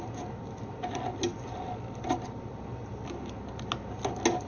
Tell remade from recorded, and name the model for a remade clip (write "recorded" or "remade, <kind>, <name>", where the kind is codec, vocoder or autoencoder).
recorded